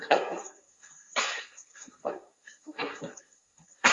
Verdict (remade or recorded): remade